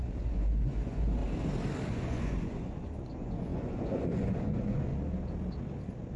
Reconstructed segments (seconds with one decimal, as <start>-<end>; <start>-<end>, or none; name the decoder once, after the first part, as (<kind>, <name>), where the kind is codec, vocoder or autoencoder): 0.0-1.2 (vocoder, Vocos); 1.9-4.9